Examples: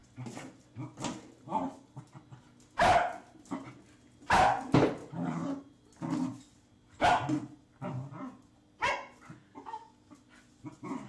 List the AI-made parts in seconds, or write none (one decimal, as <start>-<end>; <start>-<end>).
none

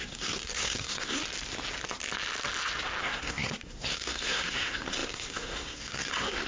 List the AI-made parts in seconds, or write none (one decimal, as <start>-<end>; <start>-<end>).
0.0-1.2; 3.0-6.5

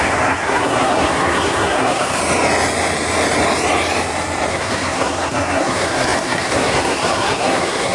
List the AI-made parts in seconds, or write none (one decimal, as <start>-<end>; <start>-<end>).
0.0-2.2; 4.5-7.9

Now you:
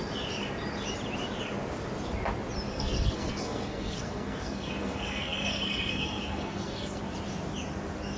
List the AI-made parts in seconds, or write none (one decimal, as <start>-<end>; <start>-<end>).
2.7-7.0

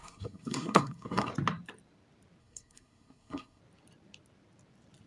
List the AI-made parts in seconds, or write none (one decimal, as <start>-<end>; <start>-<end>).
0.0-1.3; 2.4-3.6